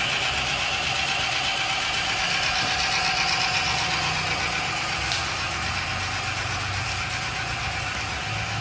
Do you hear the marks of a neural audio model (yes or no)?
no